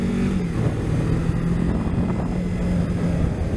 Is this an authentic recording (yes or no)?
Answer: yes